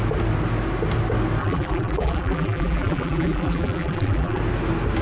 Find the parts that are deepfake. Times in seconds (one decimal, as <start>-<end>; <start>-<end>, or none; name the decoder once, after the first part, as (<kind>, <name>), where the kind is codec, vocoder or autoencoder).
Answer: 1.4-4.4 (vocoder, BigVGAN v2)